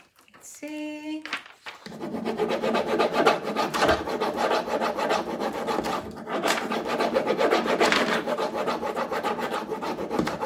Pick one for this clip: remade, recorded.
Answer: remade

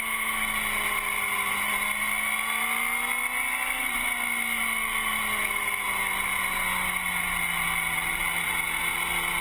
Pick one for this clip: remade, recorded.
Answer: recorded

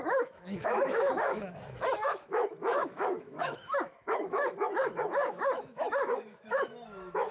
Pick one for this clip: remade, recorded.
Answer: remade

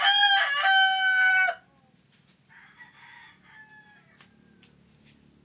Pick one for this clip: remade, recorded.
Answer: recorded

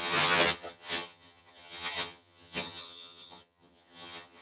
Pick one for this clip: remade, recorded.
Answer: remade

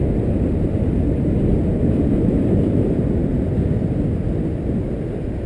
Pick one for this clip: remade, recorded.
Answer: recorded